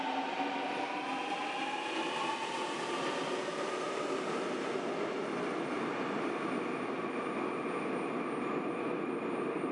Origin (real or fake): real